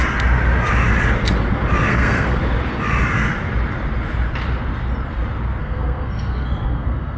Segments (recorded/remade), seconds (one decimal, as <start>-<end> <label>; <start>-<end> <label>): 0.0-1.9 recorded; 1.9-2.4 remade; 2.4-5.6 recorded; 5.6-7.2 remade